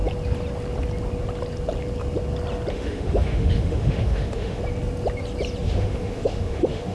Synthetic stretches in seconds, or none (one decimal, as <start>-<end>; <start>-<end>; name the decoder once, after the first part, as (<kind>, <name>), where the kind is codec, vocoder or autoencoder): 2.7-4.6 (autoencoder, DAC-VAE); 5.6-6.9

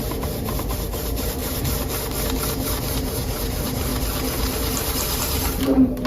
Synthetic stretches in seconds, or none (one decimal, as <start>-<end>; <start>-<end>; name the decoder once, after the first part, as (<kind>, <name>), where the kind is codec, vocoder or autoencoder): 0.0-1.4 (vocoder, BigVGAN v2); 2.8-3.9; 5.2-6.1